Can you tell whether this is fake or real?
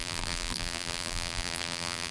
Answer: fake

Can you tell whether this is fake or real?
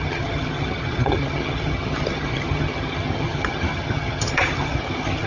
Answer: fake